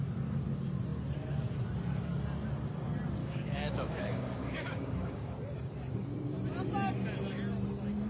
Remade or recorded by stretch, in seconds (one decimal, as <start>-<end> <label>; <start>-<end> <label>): 0.0-3.2 recorded; 3.2-5.3 remade; 5.3-8.1 recorded